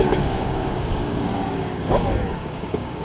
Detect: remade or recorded remade